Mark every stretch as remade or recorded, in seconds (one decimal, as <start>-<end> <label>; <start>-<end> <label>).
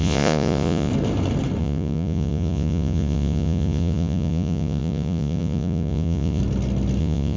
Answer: 0.0-0.9 remade; 0.9-1.6 recorded; 1.6-6.4 remade; 6.4-7.0 recorded; 7.0-7.4 remade